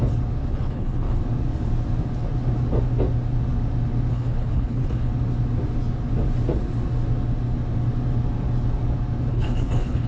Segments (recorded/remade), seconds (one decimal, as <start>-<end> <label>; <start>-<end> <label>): 0.0-0.5 recorded; 0.5-1.2 remade; 1.2-4.1 recorded; 4.1-5.1 remade; 5.1-9.3 recorded; 9.3-10.1 remade